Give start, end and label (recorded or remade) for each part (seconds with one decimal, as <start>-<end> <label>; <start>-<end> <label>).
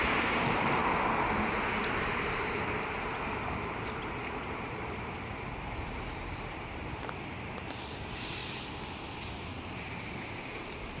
0.0-0.8 remade; 0.8-2.0 recorded; 2.0-8.4 remade; 8.4-9.3 recorded; 9.3-11.0 remade